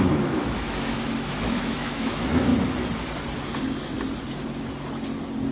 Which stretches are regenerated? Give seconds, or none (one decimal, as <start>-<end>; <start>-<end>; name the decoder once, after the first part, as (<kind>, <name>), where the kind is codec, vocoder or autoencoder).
0.0-2.5 (autoencoder, DAC-VAE)